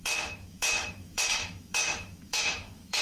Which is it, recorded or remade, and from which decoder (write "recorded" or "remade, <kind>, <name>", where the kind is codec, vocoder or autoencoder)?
remade, autoencoder, DAC-VAE